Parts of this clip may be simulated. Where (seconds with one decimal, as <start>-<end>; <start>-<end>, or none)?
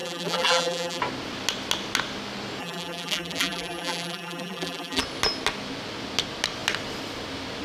0.0-1.0; 2.6-5.0